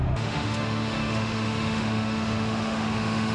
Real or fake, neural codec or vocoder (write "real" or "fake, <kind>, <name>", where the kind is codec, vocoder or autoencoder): fake, autoencoder, DAC-VAE